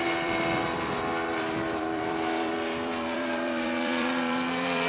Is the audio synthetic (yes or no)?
yes